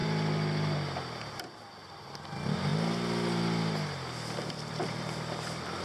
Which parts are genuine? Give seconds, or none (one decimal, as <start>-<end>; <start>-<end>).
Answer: 1.0-5.8